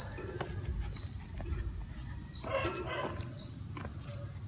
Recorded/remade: recorded